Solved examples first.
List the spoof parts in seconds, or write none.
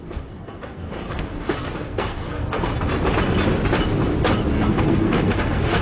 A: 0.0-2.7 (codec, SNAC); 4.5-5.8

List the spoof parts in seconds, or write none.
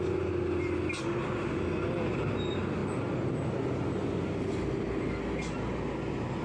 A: none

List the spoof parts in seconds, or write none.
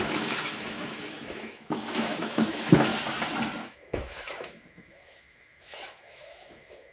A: 0.0-2.9 (autoencoder, DAC-VAE); 3.6-6.9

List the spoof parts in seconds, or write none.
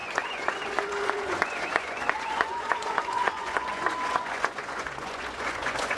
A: 0.0-6.0 (vocoder, Vocos)